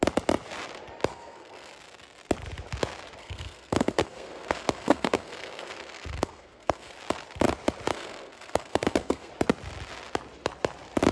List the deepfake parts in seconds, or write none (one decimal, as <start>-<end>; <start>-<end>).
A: 1.1-1.7; 3.2-6.9; 7.9-9.3